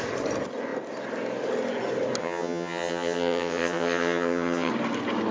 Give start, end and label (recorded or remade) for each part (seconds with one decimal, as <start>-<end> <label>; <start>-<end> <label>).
0.0-2.2 recorded; 2.2-4.7 remade; 4.7-5.3 recorded